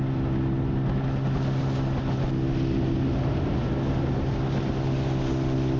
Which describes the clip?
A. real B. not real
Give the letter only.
A